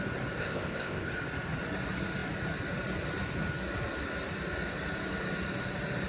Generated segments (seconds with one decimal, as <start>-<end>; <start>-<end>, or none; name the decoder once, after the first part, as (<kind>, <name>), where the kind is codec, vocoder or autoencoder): 0.4-1.1 (codec, ZipCodec)